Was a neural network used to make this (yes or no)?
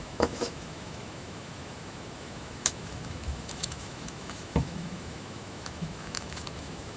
yes